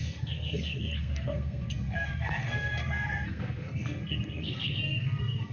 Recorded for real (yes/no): no